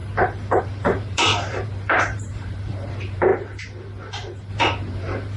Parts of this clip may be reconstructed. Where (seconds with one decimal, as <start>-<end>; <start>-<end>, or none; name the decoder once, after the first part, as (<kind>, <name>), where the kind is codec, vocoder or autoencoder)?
0.6-3.3 (vocoder, BigVGAN v2); 4.5-5.4